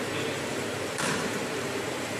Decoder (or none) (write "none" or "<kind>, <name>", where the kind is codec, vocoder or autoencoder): vocoder, BigVGAN v2